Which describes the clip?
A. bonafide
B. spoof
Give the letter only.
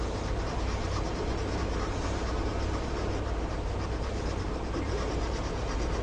B